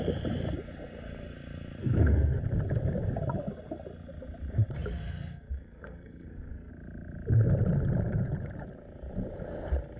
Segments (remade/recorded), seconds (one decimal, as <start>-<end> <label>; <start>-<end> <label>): 0.0-1.8 recorded; 1.8-2.4 remade; 2.4-5.0 recorded; 5.0-6.7 remade; 6.7-10.0 recorded